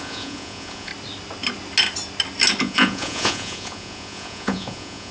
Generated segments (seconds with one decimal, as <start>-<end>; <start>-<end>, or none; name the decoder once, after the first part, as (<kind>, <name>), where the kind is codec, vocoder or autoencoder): 0.0-0.9 (vocoder, Vocos); 2.6-5.1